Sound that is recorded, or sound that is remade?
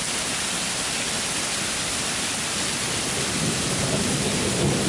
recorded